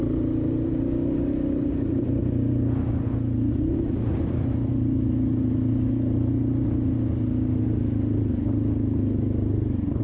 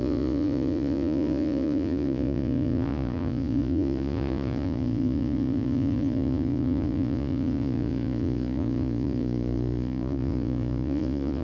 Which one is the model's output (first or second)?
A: second